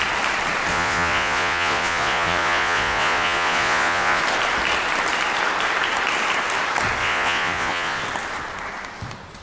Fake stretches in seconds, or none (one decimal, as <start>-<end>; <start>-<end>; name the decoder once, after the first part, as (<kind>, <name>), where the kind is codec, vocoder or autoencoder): 0.7-4.2 (vocoder, Vocos); 7.0-8.0